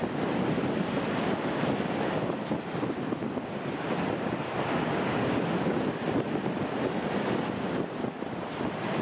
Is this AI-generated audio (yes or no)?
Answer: no